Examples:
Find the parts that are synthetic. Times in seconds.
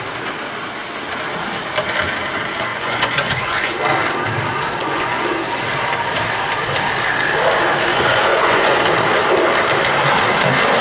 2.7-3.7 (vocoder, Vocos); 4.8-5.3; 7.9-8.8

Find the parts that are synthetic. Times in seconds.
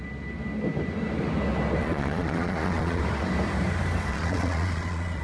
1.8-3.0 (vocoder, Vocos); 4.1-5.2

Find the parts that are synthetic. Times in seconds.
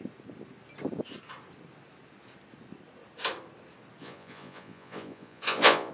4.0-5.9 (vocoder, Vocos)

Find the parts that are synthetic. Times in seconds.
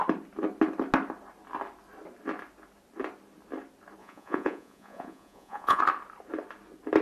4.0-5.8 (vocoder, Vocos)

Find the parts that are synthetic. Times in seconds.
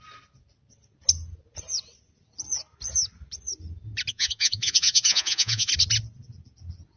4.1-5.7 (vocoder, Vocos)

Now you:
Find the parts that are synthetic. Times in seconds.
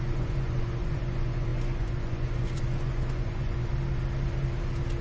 0.0-3.7 (vocoder, Vocos)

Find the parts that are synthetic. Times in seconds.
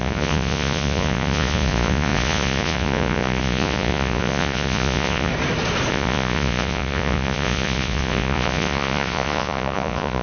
0.0-5.3 (vocoder, Vocos); 5.9-10.2